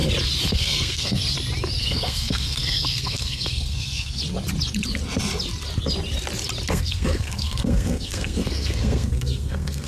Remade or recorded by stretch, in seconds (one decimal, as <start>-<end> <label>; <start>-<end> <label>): 0.0-0.5 recorded; 0.5-1.2 remade; 1.2-1.8 recorded; 1.8-4.2 remade; 4.2-6.7 recorded; 6.7-9.9 remade